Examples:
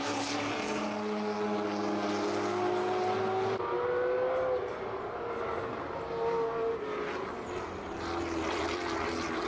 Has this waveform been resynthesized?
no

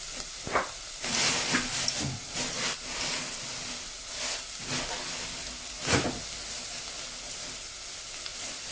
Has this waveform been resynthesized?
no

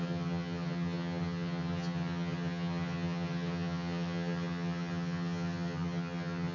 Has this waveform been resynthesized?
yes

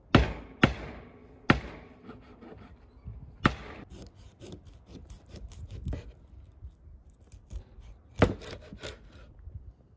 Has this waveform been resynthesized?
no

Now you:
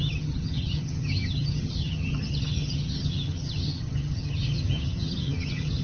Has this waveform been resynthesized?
yes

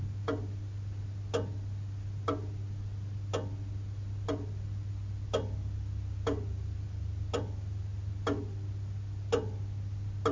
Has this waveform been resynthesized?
no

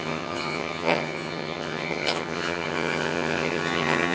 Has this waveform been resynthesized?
yes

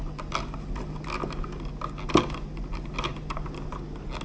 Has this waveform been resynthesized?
no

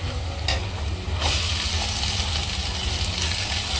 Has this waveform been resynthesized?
no